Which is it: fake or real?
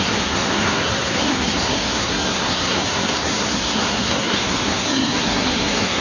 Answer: fake